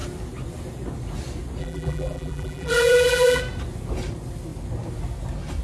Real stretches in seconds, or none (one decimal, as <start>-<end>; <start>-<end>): 0.0-1.6; 3.4-5.6